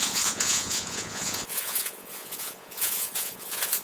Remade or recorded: remade